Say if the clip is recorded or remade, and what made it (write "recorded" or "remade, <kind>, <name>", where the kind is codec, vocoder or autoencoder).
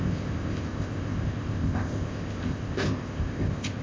remade, codec, ZipCodec